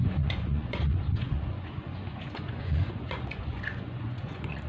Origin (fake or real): fake